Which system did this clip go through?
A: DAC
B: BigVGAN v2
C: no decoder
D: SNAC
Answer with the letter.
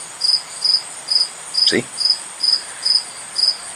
C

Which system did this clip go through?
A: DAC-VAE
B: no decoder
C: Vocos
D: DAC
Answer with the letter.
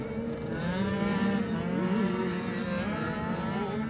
B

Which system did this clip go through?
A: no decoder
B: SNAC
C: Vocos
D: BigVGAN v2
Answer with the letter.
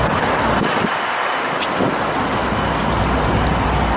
A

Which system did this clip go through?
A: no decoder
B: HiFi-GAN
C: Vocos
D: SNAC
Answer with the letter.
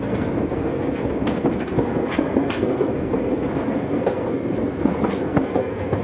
D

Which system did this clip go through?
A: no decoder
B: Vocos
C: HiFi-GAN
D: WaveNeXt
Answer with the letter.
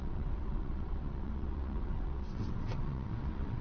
D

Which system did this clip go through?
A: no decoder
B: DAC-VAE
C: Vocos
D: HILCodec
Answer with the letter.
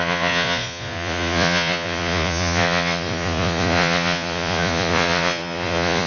C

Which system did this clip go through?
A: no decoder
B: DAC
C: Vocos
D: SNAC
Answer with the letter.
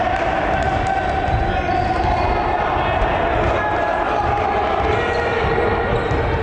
A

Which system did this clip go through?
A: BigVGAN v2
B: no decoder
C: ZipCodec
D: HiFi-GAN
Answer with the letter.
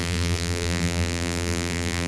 A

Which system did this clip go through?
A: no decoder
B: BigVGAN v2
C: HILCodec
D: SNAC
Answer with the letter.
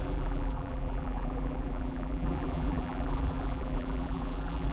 B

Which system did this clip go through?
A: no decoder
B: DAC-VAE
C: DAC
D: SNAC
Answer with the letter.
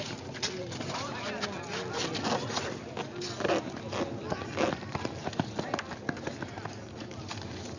A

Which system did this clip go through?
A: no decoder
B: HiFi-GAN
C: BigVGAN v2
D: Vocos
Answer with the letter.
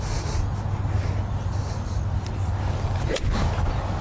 A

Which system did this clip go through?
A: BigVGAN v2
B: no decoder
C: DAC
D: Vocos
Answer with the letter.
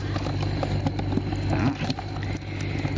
B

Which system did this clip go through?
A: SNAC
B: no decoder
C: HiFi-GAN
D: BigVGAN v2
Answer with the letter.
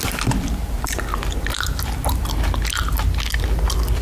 B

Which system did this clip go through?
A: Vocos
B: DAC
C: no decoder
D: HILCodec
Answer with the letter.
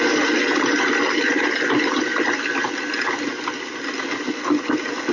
C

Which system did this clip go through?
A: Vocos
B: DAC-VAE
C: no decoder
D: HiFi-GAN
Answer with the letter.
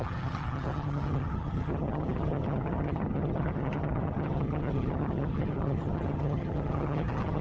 D